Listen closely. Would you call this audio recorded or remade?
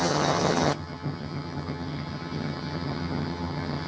remade